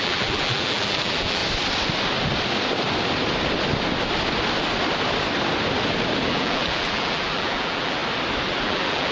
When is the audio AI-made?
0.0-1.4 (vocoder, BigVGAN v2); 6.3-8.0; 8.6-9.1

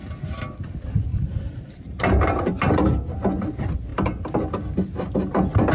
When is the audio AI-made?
1.1-2.7 (vocoder, BigVGAN v2); 3.9-4.5

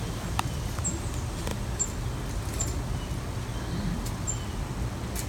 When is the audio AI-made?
none

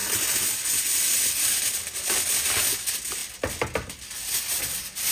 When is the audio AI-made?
0.0-1.2 (vocoder, BigVGAN v2)

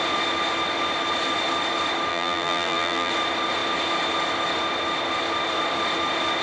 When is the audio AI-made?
2.1-3.1 (vocoder, BigVGAN v2)

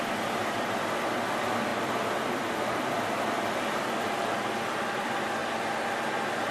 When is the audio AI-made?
1.7-4.9 (vocoder, BigVGAN v2)

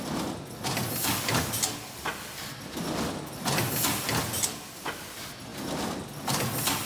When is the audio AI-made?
none